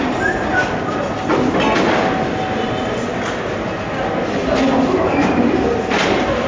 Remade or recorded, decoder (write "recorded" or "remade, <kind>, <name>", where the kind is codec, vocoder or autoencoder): recorded